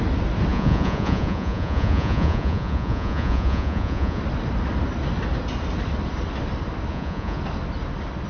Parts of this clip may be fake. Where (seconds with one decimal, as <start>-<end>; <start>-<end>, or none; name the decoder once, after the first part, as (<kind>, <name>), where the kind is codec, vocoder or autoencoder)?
0.5-4.2 (vocoder, Vocos); 6.9-7.4

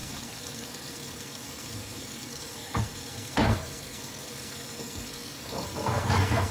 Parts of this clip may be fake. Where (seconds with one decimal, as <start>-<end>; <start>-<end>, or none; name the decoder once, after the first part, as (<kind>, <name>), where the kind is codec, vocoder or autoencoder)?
0.0-6.5 (codec, SNAC)

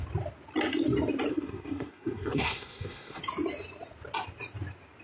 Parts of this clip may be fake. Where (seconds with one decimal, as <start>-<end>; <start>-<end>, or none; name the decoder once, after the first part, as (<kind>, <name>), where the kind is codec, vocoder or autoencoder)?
1.3-3.2 (codec, SNAC)